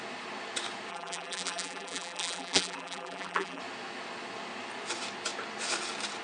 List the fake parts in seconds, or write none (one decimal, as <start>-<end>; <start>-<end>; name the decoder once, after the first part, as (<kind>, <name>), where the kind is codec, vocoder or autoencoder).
0.9-3.6 (vocoder, BigVGAN v2)